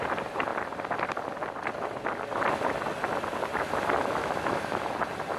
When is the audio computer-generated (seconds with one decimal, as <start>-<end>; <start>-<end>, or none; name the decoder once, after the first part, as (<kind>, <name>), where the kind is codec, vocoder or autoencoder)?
4.2-4.8 (autoencoder, DAC-VAE)